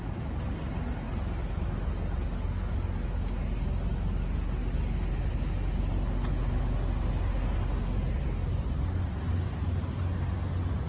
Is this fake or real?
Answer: real